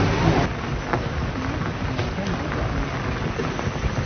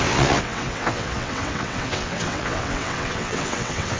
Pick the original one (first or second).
first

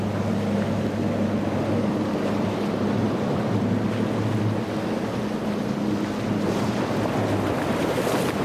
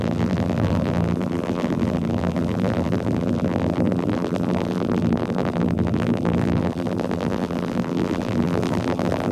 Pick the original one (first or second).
first